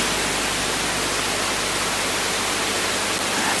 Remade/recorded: recorded